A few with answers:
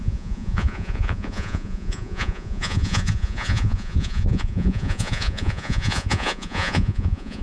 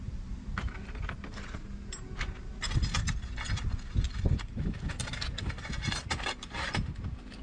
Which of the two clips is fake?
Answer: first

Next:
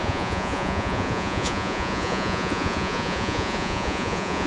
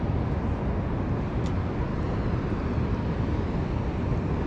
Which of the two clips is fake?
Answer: first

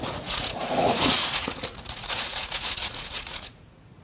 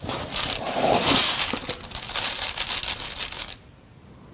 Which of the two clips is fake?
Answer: first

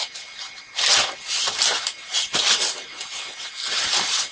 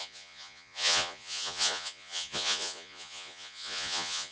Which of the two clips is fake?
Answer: second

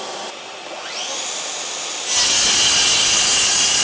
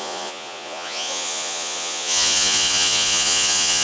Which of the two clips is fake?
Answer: second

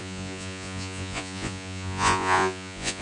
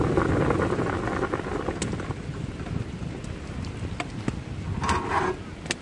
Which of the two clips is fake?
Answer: first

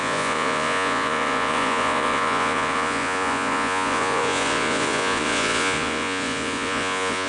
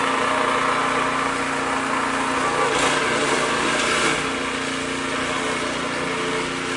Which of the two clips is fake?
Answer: first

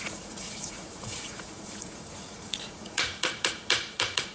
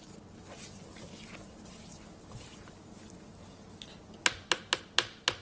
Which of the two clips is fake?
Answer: first